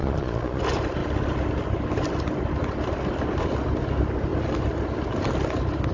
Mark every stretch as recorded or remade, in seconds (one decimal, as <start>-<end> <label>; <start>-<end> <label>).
0.0-0.6 remade; 0.6-5.9 recorded